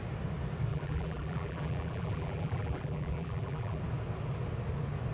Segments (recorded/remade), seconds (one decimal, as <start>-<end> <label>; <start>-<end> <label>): 0.0-0.7 recorded; 0.7-3.8 remade; 3.8-5.1 recorded